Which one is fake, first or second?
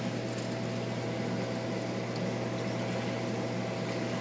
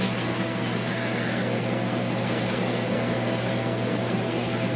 second